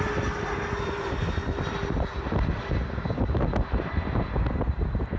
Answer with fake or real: real